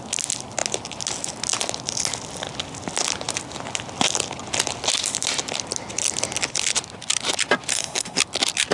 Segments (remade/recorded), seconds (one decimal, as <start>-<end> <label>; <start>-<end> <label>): 0.0-7.7 recorded; 7.7-8.2 remade; 8.2-8.7 recorded